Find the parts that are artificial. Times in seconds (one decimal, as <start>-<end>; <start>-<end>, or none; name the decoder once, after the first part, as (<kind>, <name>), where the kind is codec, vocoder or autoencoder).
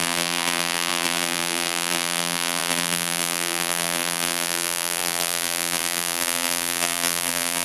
0.0-7.6 (vocoder, BigVGAN v2)